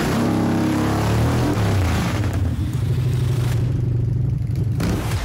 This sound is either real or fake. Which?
fake